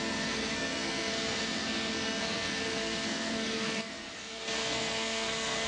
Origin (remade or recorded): remade